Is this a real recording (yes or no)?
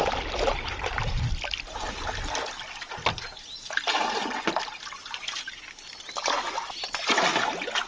yes